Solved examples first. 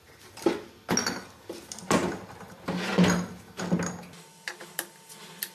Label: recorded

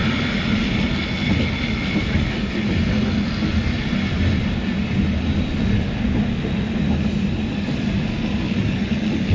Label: recorded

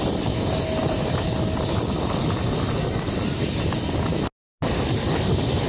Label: recorded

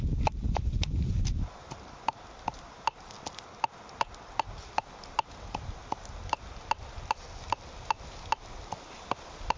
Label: recorded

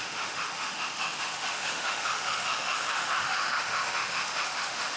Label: remade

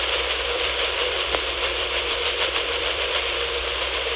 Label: remade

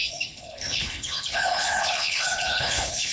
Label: remade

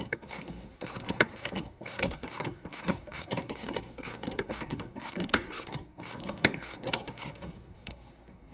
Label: remade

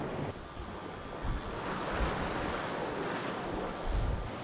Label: recorded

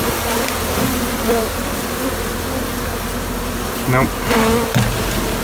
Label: recorded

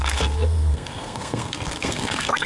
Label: remade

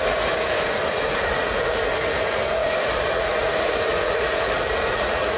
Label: remade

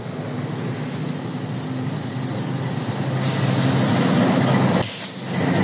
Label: recorded